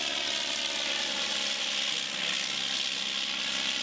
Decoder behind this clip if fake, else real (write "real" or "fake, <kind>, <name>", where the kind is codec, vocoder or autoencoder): real